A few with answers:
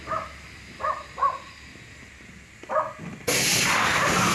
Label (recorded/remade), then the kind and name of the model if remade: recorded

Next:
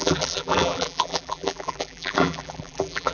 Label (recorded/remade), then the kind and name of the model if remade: remade, vocoder, BigVGAN v2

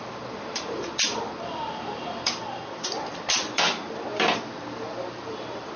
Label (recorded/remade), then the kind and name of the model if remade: remade, vocoder, BigVGAN v2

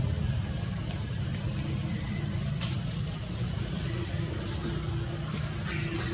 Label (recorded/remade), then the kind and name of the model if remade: remade, vocoder, BigVGAN v2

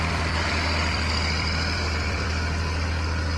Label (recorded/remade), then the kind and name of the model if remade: remade, vocoder, BigVGAN v2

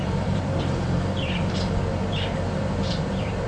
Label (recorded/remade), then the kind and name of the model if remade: remade, vocoder, BigVGAN v2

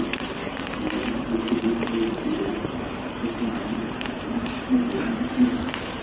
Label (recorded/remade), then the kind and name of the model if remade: remade, vocoder, BigVGAN v2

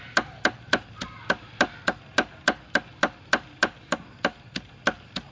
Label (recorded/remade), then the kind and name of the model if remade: recorded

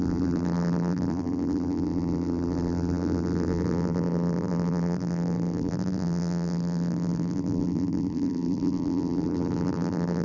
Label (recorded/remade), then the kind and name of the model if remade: remade, vocoder, BigVGAN v2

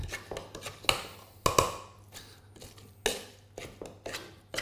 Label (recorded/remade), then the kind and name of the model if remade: recorded